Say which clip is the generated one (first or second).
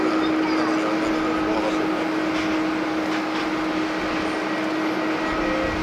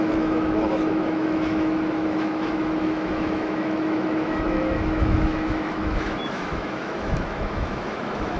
second